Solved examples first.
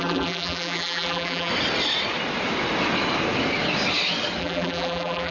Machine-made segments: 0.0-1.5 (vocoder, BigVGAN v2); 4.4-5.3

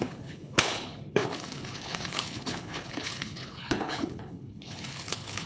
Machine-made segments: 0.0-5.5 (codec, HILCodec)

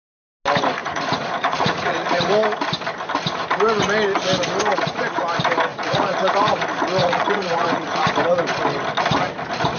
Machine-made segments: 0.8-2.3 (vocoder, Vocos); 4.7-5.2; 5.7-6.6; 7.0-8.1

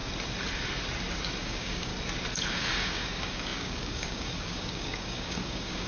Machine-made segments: 1.4-1.9 (codec, DAC); 2.5-5.9

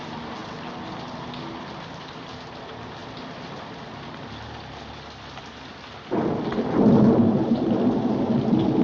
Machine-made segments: none

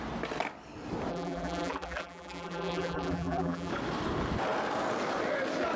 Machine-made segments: 1.1-3.7 (vocoder, BigVGAN v2)